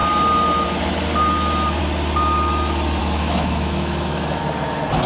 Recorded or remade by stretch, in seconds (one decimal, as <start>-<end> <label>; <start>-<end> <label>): 0.0-3.0 recorded; 3.0-4.4 remade; 4.4-5.1 recorded